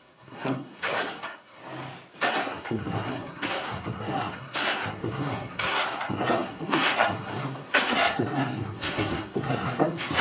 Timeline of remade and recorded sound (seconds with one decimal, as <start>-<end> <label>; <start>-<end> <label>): 0.0-1.6 remade; 1.6-2.3 recorded; 2.3-10.2 remade